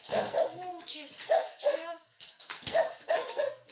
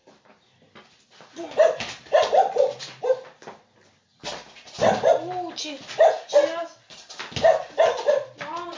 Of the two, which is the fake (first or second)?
first